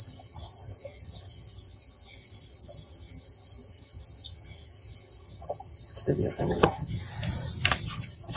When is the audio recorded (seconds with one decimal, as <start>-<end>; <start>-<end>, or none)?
7.0-7.8